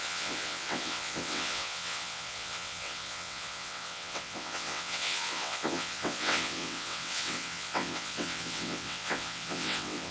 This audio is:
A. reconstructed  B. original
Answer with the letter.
A